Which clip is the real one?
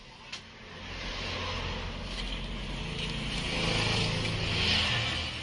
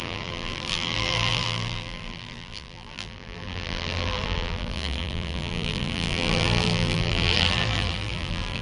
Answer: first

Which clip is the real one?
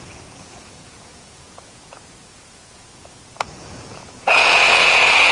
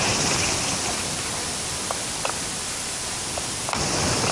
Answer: second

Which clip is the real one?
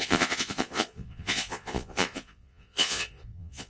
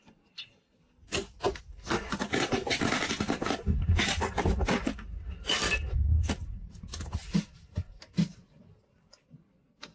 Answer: second